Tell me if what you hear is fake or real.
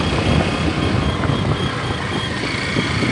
real